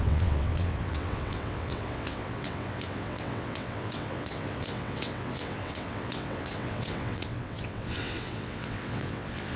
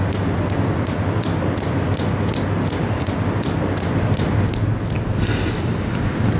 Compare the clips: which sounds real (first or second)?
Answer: second